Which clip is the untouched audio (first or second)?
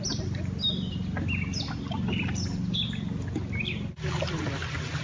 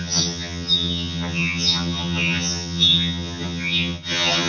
first